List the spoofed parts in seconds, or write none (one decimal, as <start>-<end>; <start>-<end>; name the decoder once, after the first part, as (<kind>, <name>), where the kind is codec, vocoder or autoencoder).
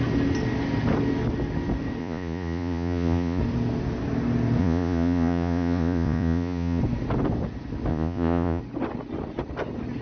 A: 2.0-3.4 (vocoder, Vocos); 4.6-6.8; 7.9-8.6